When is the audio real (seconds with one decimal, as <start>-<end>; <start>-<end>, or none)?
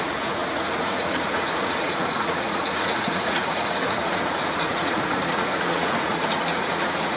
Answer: none